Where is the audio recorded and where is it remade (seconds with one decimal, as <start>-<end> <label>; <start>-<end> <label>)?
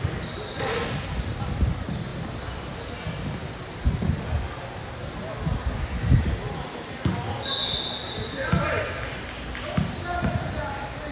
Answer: 0.0-11.1 recorded